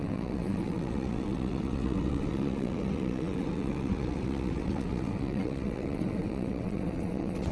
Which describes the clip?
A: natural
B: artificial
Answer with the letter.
B